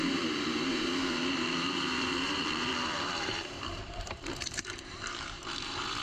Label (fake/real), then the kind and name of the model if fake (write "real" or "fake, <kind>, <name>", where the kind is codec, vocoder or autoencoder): fake, vocoder, BigVGAN v2